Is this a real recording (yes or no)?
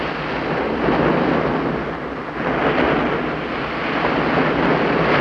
yes